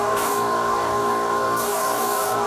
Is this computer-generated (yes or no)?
yes